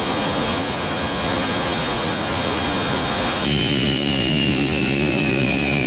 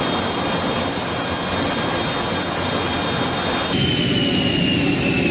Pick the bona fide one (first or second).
second